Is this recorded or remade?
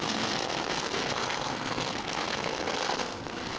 remade